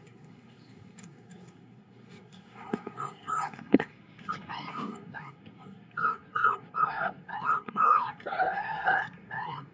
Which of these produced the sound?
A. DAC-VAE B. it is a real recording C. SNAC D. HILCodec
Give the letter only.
C